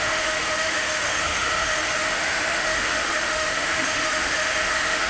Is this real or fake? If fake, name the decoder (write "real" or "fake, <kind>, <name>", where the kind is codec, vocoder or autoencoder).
fake, autoencoder, DAC-VAE